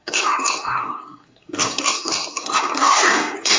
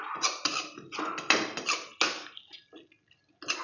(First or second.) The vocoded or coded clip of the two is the first